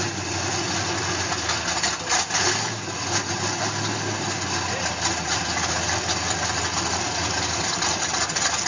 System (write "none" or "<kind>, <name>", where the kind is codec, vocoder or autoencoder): none